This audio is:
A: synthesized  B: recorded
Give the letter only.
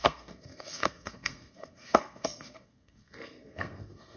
A